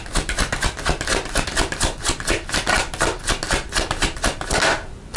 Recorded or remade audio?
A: recorded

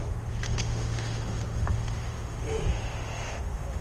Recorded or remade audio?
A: remade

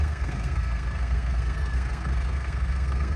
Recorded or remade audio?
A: remade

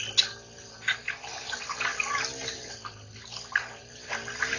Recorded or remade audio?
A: recorded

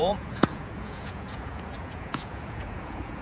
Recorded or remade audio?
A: remade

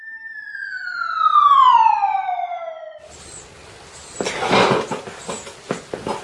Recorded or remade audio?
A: recorded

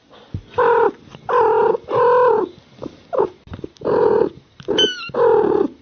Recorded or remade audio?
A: recorded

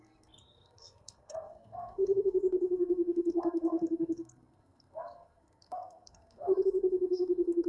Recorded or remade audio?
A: remade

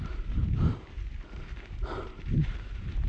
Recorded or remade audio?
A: remade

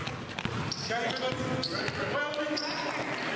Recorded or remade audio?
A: recorded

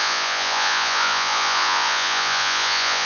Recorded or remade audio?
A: remade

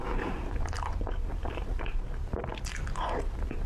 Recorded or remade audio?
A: recorded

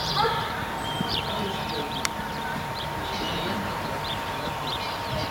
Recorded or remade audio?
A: remade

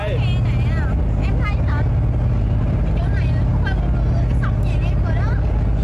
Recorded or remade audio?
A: recorded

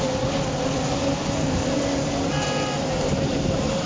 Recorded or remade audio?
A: recorded